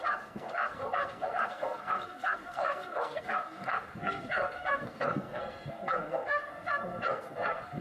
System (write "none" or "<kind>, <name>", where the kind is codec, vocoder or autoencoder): codec, SNAC